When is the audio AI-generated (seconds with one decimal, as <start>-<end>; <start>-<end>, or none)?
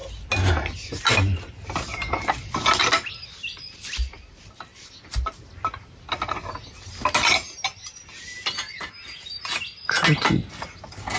none